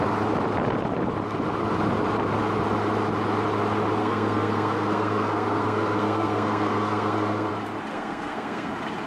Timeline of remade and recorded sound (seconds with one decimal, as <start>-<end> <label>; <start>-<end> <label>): 0.0-4.0 recorded; 4.0-7.5 remade; 7.5-7.9 recorded; 7.9-8.7 remade; 8.7-9.1 recorded